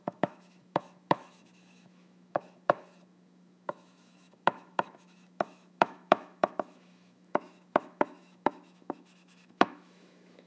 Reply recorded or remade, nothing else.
remade